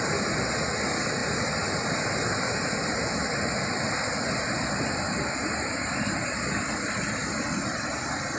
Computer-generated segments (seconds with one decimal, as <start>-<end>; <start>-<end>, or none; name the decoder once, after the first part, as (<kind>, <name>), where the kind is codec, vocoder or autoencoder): none